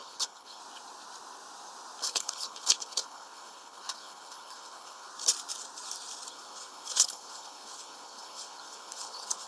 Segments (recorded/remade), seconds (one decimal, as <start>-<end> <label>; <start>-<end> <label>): 0.0-0.6 remade; 0.6-2.0 recorded; 2.0-5.1 remade; 5.1-6.3 recorded; 6.3-9.5 remade